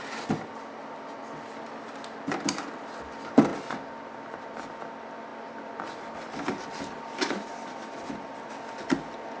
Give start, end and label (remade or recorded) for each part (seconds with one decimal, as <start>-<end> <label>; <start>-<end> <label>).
0.0-9.4 recorded